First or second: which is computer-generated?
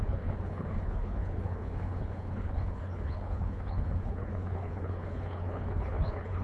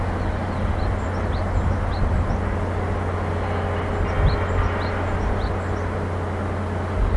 first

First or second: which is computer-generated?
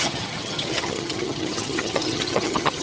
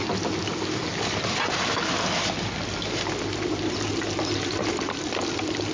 first